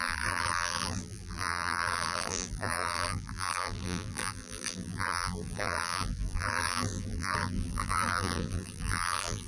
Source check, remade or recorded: remade